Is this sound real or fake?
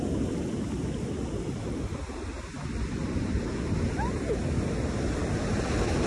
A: real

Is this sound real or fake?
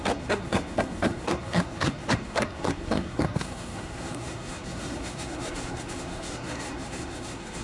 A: fake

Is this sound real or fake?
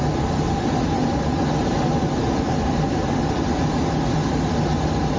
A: real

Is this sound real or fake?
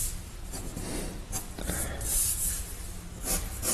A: real